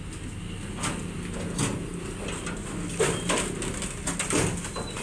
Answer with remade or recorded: recorded